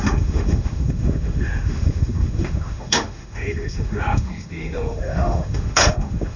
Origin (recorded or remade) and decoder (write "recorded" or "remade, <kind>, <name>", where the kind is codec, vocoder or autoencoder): remade, autoencoder, DAC-VAE